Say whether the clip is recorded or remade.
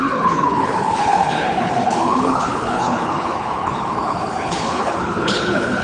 remade